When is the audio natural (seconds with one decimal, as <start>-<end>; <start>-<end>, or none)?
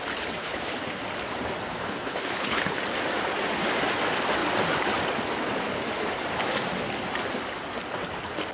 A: 0.0-0.4; 1.0-1.8; 2.8-8.5